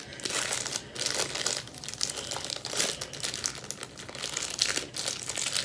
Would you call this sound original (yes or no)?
yes